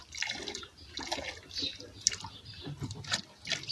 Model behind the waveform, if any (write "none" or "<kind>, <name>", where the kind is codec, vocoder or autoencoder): none